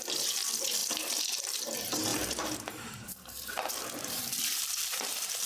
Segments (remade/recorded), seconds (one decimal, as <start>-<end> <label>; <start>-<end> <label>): 0.0-2.1 recorded; 2.1-5.5 remade